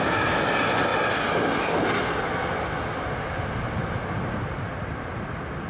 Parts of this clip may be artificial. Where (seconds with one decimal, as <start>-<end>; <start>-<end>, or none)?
none